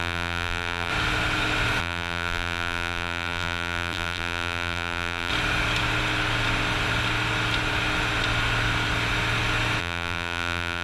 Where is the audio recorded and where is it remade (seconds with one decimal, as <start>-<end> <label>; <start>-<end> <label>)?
0.0-0.9 remade; 0.9-1.8 recorded; 1.8-5.3 remade; 5.3-9.8 recorded; 9.8-10.8 remade